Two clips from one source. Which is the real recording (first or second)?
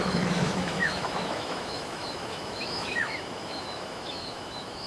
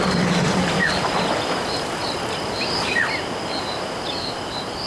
second